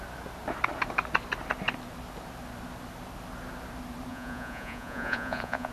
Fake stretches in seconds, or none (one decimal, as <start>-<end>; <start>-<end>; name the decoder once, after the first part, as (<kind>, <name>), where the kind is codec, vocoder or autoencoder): 4.1-5.7 (vocoder, Vocos)